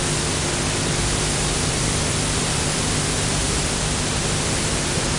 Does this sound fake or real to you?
real